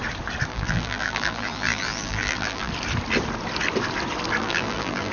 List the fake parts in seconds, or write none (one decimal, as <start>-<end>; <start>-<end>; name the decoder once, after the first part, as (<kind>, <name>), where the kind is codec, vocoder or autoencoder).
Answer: 0.5-2.7 (vocoder, BigVGAN v2); 4.4-5.1